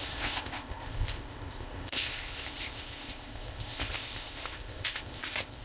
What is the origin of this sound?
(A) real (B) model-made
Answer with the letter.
B